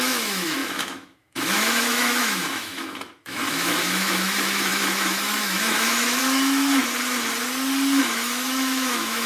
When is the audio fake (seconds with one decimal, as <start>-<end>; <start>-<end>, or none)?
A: 0.0-6.8; 8.0-9.3